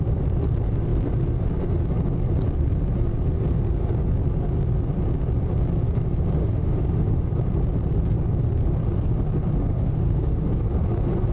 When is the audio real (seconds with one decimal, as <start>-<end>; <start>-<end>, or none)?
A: 0.0-6.4; 7.3-9.7; 10.6-11.3